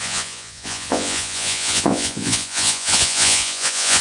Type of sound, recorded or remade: remade